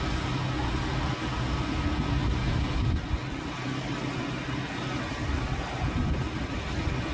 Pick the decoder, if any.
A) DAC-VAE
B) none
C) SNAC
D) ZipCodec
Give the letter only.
B